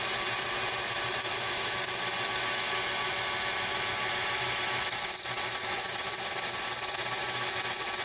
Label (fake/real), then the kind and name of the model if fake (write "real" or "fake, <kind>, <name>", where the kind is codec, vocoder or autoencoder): real